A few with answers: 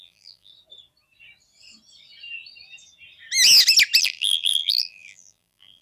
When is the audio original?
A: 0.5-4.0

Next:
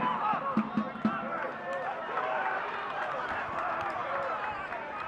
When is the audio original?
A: 0.0-2.0; 3.6-4.0; 4.5-5.1